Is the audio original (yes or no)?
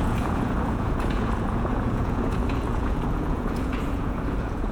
no